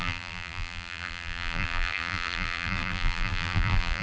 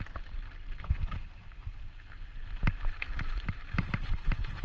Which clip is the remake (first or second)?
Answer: first